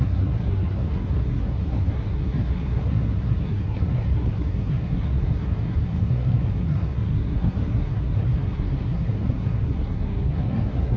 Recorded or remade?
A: remade